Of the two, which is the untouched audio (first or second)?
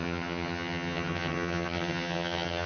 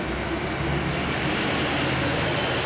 second